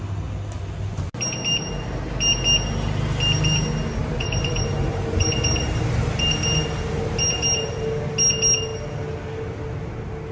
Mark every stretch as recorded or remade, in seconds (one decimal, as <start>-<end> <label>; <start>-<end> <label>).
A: 0.0-4.0 recorded; 4.0-6.1 remade; 6.1-10.3 recorded